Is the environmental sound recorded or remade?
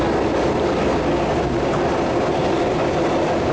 recorded